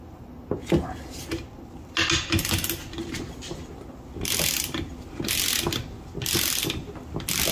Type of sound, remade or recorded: recorded